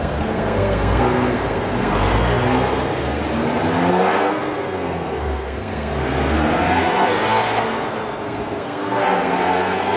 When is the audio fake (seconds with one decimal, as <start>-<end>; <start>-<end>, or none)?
0.0-3.2; 3.9-10.0